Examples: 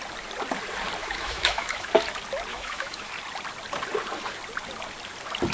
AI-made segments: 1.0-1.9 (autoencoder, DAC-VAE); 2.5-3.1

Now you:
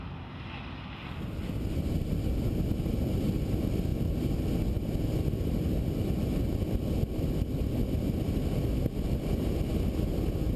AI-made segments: none

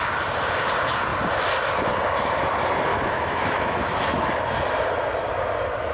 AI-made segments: 2.9-4.4 (autoencoder, DAC-VAE)

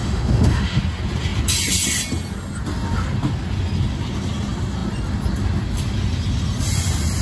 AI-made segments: 0.0-0.8 (autoencoder, DAC-VAE)